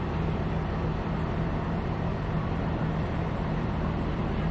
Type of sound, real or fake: fake